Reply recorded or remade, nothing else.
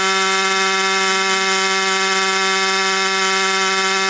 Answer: recorded